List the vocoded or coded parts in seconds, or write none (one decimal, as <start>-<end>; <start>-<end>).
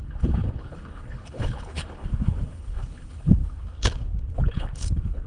0.0-5.3